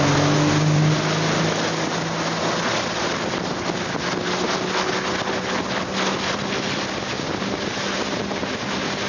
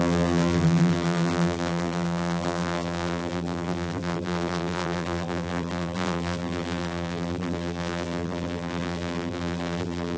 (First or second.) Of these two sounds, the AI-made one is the second